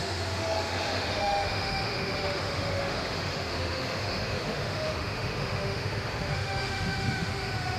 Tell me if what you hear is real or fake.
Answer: fake